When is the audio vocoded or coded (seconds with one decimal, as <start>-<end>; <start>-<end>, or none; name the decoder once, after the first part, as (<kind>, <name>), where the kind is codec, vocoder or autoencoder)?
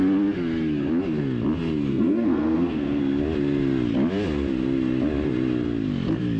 1.9-3.0 (codec, SNAC)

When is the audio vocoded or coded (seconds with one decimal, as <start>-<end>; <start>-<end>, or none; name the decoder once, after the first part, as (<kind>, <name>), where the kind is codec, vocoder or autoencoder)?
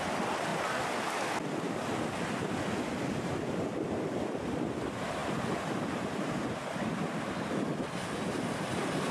none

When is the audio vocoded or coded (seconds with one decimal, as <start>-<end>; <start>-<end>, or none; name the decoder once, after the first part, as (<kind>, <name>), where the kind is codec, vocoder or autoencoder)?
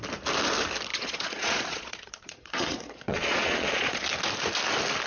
0.9-4.0 (vocoder, Vocos)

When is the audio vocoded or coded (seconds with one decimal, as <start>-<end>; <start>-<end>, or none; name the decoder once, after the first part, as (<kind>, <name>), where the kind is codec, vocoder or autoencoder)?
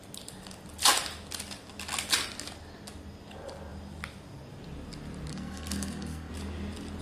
5.3-6.3 (codec, SNAC)